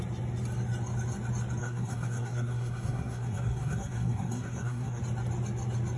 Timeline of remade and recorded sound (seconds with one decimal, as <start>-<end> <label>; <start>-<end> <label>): 0.0-1.6 recorded; 1.6-5.0 remade; 5.0-6.0 recorded